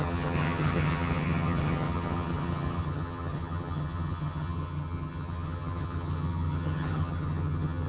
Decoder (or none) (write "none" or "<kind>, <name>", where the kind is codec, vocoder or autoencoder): vocoder, HiFi-GAN